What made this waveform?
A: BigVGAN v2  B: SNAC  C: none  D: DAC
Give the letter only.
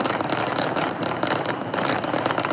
A